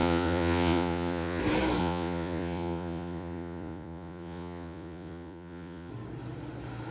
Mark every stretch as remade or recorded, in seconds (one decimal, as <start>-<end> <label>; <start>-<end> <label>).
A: 0.0-1.4 remade; 1.4-1.8 recorded; 1.8-5.9 remade; 5.9-6.9 recorded